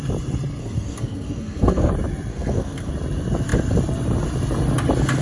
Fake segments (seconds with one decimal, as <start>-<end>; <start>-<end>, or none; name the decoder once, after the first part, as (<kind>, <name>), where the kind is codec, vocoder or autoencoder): 0.6-1.9 (codec, SNAC); 2.3-2.9